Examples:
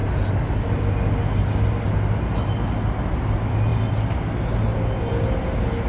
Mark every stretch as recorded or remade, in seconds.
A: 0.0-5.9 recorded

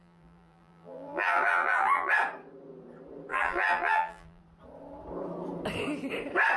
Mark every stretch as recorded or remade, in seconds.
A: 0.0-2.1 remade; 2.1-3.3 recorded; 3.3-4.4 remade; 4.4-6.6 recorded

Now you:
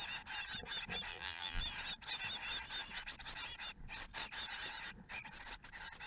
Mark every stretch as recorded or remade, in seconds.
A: 0.0-1.1 recorded; 1.1-1.6 remade; 1.6-6.1 recorded

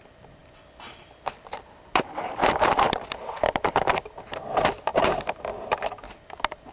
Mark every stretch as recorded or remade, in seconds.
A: 0.0-4.9 remade; 4.9-6.7 recorded